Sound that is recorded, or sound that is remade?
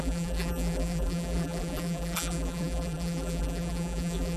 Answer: remade